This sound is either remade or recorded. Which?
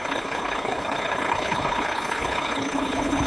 remade